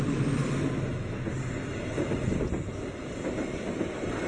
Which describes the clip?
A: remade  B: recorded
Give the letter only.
B